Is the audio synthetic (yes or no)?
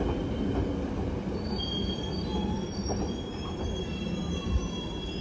no